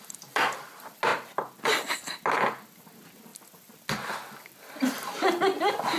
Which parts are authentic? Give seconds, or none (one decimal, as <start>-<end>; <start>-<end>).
0.0-6.0